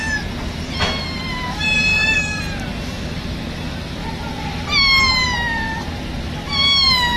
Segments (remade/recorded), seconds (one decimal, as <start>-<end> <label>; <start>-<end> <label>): 0.0-1.9 recorded; 1.9-2.4 remade; 2.4-7.2 recorded

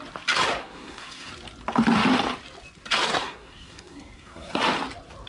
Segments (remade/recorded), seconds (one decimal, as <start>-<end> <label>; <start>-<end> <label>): 0.0-0.6 recorded; 0.6-1.3 remade; 1.3-3.2 recorded; 3.2-4.6 remade; 4.6-5.3 recorded

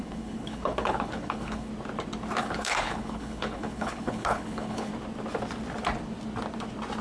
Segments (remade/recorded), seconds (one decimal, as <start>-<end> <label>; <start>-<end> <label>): 0.0-1.7 remade; 1.7-2.4 recorded; 2.4-4.9 remade; 4.9-7.0 recorded

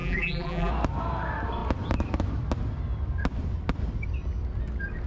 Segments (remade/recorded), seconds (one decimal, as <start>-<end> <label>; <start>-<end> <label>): 0.0-0.7 remade; 0.7-5.1 recorded

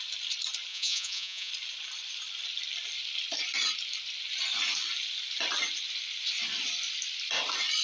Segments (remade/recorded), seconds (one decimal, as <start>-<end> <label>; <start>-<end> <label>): 0.0-0.7 recorded; 0.7-1.5 remade; 1.5-7.8 recorded

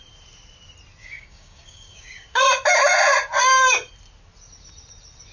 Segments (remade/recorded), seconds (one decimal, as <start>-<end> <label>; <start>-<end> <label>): 0.0-1.0 recorded; 1.0-2.4 remade; 2.4-5.3 recorded